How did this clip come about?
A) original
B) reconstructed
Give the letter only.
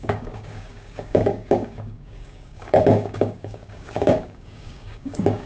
B